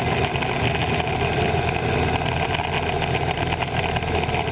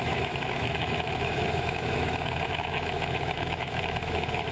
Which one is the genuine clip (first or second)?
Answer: first